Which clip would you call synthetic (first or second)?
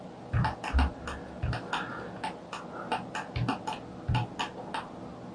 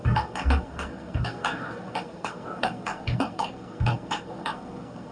second